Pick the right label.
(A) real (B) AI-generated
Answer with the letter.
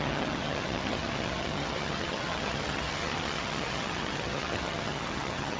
B